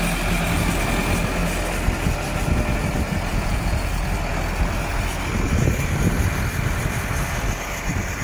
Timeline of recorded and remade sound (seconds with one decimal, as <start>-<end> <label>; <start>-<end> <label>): 0.0-3.3 recorded; 3.3-3.9 remade; 3.9-8.2 recorded